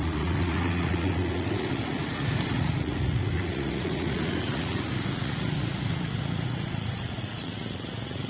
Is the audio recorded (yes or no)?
no